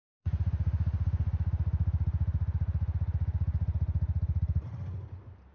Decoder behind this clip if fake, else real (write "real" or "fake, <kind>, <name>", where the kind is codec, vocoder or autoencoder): real